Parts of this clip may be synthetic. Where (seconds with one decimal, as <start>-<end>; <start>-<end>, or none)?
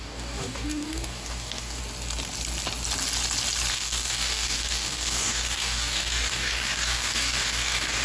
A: 0.0-1.8; 3.7-8.0